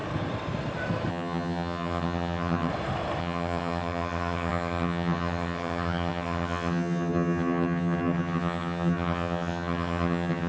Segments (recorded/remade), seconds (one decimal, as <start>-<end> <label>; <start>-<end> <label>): 0.0-1.1 recorded; 1.1-2.7 remade; 2.7-3.2 recorded; 3.2-10.5 remade